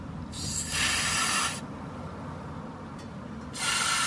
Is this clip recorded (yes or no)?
yes